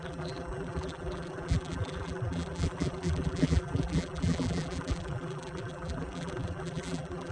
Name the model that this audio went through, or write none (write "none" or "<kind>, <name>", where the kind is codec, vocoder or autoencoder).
vocoder, BigVGAN v2